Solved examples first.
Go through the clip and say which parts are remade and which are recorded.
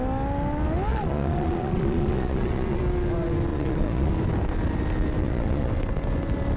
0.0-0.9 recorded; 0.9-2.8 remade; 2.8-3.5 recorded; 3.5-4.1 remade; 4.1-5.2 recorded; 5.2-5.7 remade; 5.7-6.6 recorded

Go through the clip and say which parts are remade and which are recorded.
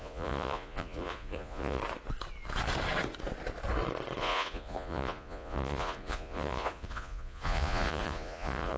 0.0-1.8 remade; 1.8-4.2 recorded; 4.2-8.8 remade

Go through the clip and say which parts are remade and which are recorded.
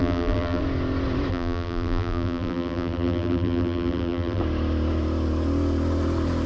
0.0-0.6 remade; 0.6-1.3 recorded; 1.3-4.4 remade; 4.4-6.5 recorded